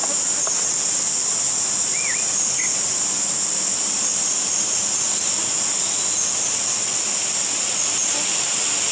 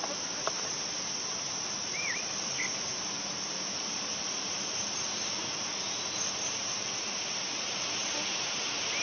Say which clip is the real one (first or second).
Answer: first